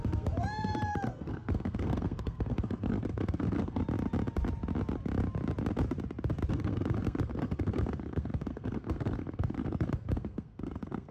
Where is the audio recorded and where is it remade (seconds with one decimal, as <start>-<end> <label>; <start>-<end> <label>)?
0.0-3.8 remade; 3.8-6.5 recorded; 6.5-11.1 remade